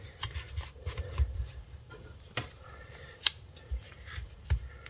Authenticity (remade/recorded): remade